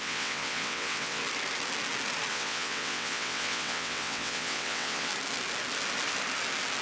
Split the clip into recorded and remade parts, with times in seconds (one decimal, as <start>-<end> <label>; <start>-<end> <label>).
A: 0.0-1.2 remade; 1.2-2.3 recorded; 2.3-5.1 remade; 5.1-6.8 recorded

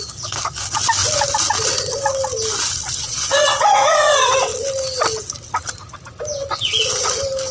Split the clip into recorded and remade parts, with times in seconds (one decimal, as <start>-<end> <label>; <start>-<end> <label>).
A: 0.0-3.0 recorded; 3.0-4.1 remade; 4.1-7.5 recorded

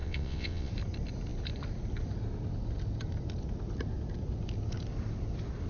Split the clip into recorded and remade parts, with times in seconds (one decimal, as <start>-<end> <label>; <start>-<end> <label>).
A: 0.0-0.7 remade; 0.7-5.7 recorded

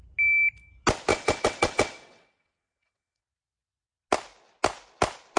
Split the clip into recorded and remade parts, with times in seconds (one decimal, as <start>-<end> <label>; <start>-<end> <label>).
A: 0.0-1.1 recorded; 1.1-3.2 remade; 3.2-5.4 recorded

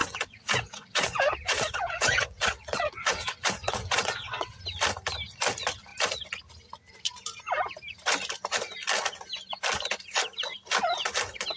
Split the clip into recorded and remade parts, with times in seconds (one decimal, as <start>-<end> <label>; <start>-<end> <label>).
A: 0.0-4.6 remade; 4.6-11.6 recorded

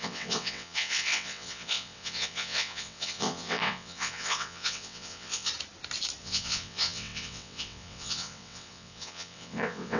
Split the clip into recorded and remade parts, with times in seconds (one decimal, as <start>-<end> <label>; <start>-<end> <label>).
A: 0.0-5.5 remade; 5.5-6.2 recorded; 6.2-10.0 remade